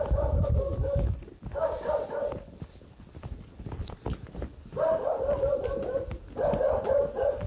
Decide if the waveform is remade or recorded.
recorded